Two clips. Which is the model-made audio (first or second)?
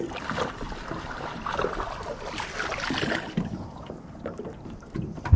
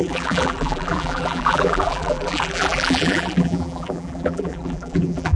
second